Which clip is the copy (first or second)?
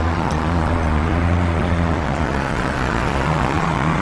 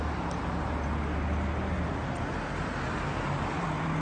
first